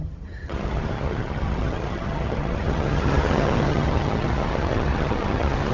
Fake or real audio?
fake